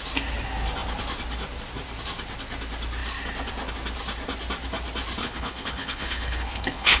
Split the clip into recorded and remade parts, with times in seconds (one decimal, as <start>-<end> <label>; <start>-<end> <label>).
0.0-5.2 recorded; 5.2-7.0 remade